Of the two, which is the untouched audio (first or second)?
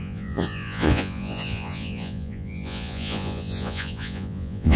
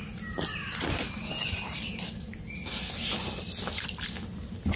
second